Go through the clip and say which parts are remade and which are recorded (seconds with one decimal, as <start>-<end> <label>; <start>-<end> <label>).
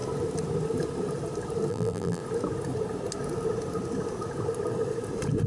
0.0-1.7 recorded; 1.7-2.2 remade; 2.2-5.5 recorded